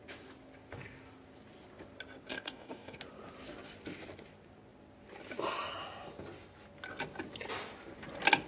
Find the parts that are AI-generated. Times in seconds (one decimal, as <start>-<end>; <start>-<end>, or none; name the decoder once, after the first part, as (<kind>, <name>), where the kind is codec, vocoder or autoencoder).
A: 2.3-3.0 (codec, DAC)